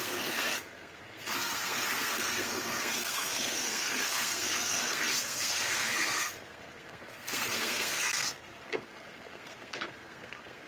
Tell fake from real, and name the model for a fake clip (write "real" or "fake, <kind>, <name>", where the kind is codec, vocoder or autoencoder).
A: fake, codec, SNAC